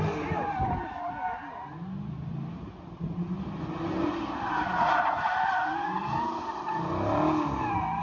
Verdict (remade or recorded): recorded